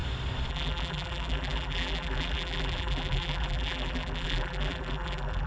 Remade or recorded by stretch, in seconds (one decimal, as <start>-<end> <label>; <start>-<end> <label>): 0.0-0.5 recorded; 0.5-5.5 remade